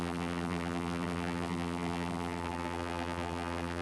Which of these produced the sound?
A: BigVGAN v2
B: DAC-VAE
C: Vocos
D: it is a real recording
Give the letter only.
A